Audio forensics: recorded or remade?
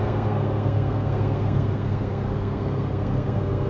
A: remade